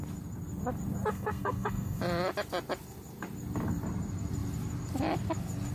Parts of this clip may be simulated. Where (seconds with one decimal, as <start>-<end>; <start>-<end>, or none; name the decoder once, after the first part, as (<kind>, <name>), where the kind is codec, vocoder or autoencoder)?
1.1-2.0 (codec, SNAC)